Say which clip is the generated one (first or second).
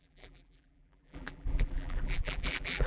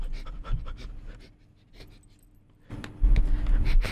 first